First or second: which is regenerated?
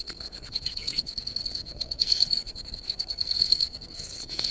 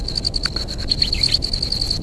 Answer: first